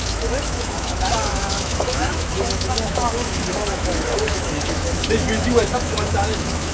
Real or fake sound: fake